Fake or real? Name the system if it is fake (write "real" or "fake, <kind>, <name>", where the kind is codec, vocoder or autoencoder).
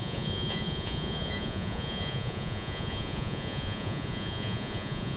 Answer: fake, vocoder, Vocos